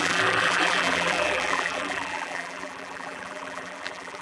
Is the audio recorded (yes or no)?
no